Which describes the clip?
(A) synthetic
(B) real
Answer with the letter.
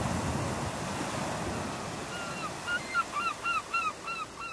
B